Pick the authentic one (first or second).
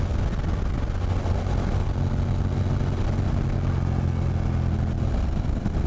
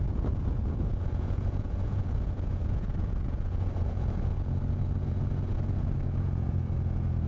first